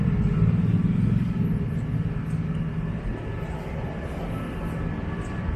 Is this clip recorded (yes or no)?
yes